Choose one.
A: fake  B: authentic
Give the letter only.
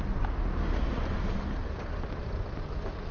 B